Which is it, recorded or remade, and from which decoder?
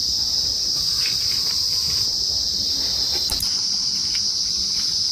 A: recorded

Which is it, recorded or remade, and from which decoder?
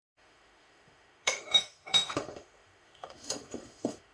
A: remade, autoencoder, DAC-VAE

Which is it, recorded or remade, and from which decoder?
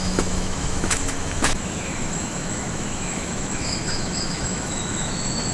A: remade, autoencoder, DAC-VAE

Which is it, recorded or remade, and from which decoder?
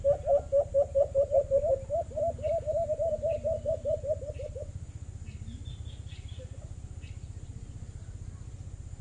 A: recorded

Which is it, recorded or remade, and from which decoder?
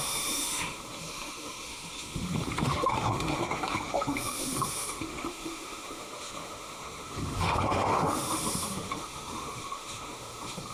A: remade, autoencoder, DAC-VAE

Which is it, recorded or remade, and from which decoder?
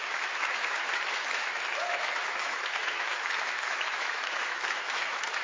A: remade, autoencoder, DAC-VAE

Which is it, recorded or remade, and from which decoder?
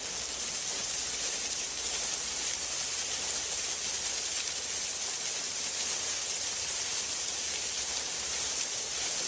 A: recorded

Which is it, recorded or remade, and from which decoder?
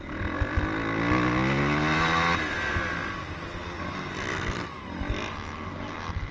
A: recorded